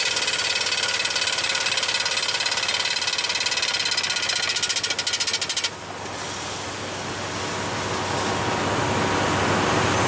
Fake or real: real